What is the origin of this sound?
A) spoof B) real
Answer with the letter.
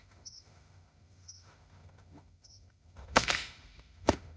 A